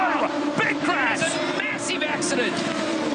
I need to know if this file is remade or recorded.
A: remade